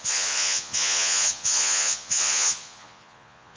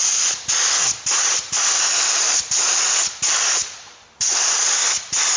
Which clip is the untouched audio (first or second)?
second